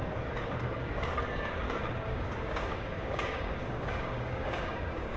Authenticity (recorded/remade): remade